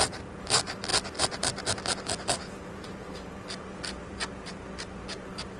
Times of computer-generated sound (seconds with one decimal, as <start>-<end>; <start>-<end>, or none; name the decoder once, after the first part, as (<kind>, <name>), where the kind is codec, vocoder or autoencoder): none